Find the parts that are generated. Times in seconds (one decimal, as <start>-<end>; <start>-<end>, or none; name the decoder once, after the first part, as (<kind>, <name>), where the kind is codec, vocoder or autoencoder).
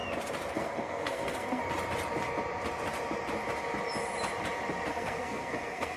0.5-1.6 (codec, SNAC); 4.9-6.0